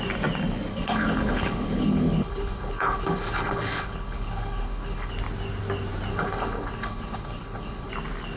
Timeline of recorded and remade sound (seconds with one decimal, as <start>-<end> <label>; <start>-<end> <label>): 0.0-0.7 recorded; 0.7-5.1 remade; 5.1-6.1 recorded; 6.1-7.9 remade; 7.9-8.4 recorded